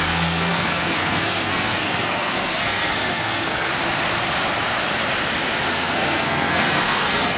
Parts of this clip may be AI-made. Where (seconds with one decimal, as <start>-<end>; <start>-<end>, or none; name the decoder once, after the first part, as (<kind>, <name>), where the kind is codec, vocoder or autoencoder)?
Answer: 0.0-3.7 (codec, SNAC); 5.7-7.4